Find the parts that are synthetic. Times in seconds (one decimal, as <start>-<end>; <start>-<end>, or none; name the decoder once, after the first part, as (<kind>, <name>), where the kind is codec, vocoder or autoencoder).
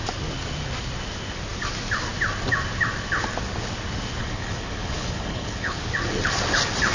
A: 4.2-5.8 (codec, HILCodec)